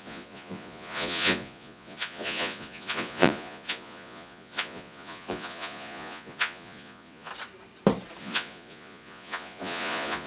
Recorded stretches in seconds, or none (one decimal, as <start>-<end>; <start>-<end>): 7.3-8.2